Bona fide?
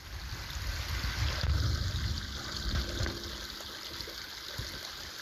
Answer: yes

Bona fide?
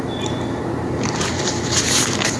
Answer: no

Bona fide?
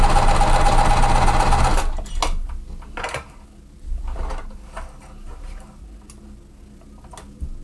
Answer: yes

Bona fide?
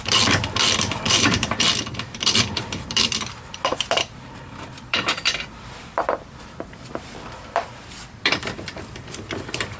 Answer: no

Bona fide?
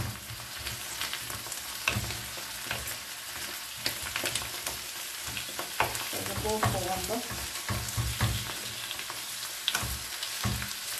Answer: yes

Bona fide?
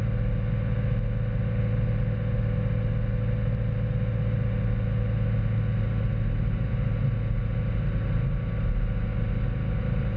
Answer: yes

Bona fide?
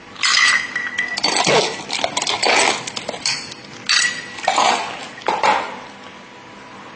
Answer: yes